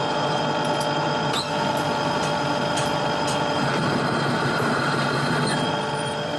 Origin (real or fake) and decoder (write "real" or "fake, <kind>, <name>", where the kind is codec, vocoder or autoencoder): real